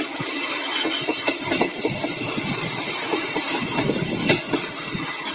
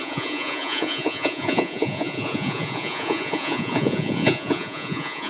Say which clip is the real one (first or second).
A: first